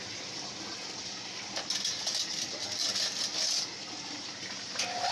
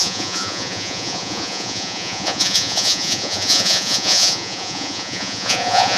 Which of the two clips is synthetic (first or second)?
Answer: second